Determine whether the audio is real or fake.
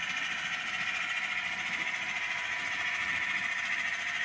real